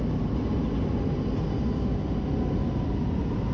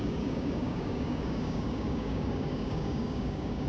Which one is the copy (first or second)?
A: second